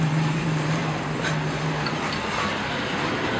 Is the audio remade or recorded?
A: recorded